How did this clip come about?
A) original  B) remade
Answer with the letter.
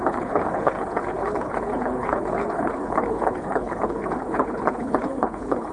B